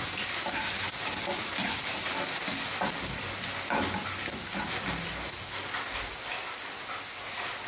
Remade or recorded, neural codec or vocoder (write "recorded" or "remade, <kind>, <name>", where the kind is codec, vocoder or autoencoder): recorded